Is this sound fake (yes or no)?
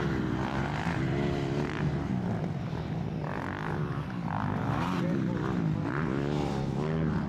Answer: no